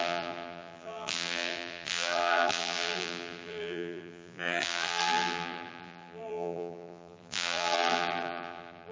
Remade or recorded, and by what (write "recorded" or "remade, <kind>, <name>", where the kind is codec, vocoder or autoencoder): remade, vocoder, BigVGAN v2